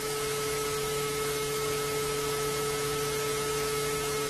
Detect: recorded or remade remade